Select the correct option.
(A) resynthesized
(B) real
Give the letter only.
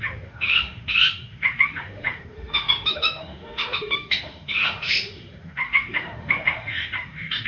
A